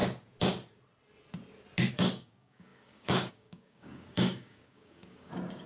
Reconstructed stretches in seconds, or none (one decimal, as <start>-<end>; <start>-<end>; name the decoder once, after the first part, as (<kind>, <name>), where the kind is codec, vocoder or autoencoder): 1.9-5.7 (codec, DAC)